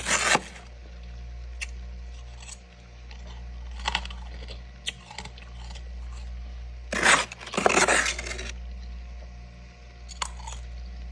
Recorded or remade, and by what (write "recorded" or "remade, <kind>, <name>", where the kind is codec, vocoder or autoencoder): recorded